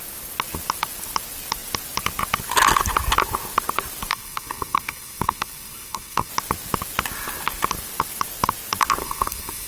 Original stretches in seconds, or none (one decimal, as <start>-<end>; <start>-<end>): 0.0-4.1; 6.3-9.0